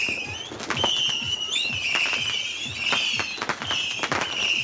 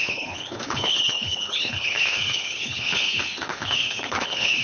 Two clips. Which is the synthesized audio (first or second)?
second